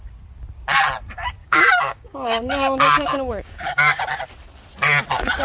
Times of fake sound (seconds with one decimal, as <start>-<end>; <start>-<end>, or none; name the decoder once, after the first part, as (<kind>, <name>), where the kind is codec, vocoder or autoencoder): 1.4-4.0 (codec, DAC)